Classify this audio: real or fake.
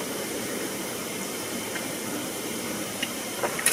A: fake